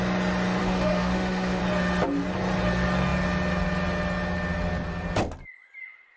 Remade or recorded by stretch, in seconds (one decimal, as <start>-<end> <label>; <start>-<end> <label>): 0.0-0.6 recorded; 0.6-1.6 remade; 1.6-6.2 recorded